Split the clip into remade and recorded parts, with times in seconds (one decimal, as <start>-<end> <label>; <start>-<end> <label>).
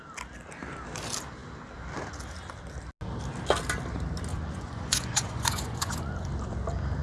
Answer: 0.0-4.3 recorded; 4.3-6.1 remade; 6.1-7.0 recorded